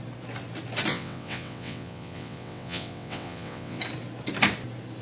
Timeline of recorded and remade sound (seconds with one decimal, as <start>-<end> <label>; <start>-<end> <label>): 0.0-0.9 recorded; 0.9-3.8 remade; 3.8-5.0 recorded